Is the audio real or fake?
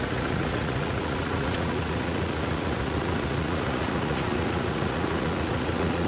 fake